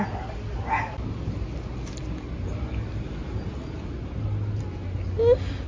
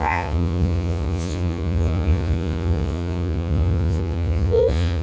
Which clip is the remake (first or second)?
second